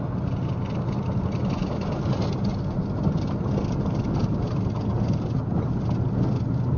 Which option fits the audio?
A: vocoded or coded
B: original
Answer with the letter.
B